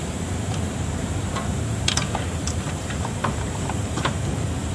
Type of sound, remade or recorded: remade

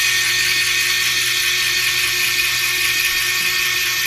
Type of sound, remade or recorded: recorded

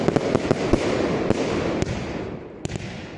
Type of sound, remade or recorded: recorded